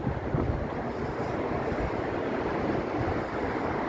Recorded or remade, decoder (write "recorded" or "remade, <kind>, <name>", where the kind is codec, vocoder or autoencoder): recorded